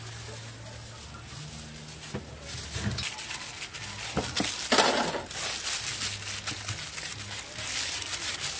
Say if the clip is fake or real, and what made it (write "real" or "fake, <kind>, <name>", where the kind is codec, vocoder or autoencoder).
real